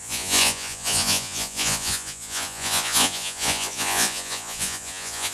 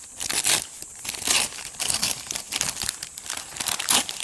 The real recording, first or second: second